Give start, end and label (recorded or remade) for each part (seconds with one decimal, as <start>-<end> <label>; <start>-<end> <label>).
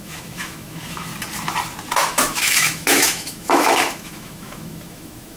0.0-1.1 remade; 1.1-2.1 recorded; 2.1-5.4 remade